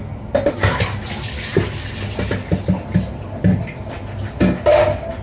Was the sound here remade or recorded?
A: recorded